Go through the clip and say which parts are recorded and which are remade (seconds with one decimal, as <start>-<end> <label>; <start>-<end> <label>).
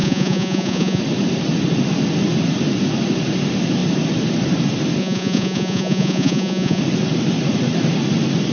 0.0-1.0 remade; 1.0-5.0 recorded; 5.0-6.8 remade; 6.8-8.5 recorded